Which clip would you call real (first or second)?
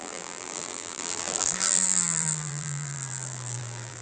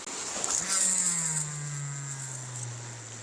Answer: second